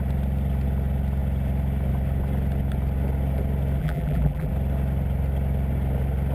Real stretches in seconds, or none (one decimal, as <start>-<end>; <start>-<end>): 0.0-3.8; 4.5-6.3